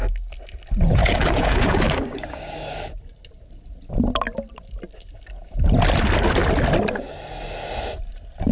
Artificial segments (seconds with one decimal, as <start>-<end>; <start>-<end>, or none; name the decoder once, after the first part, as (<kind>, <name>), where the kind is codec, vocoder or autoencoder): 1.0-3.0 (codec, DAC)